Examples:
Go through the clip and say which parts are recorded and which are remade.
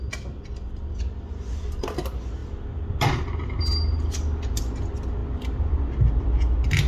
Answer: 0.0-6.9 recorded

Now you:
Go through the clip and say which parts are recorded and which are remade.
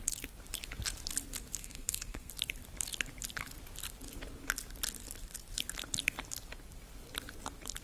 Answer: 0.0-1.6 recorded; 1.6-2.3 remade; 2.3-7.8 recorded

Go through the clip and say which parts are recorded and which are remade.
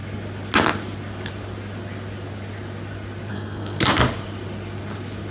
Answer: 0.0-3.3 recorded; 3.3-3.8 remade; 3.8-5.3 recorded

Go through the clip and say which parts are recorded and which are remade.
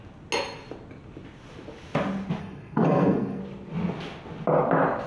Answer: 0.0-2.4 recorded; 2.4-3.4 remade; 3.4-5.1 recorded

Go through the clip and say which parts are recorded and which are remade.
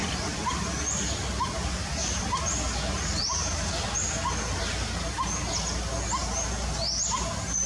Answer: 0.0-7.7 recorded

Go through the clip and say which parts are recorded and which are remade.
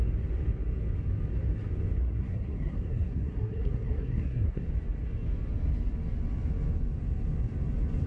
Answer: 0.0-2.0 recorded; 2.0-4.7 remade; 4.7-8.1 recorded